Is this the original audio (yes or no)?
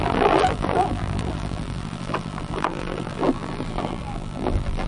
no